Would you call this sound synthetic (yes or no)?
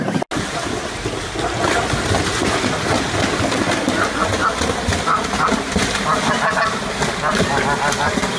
no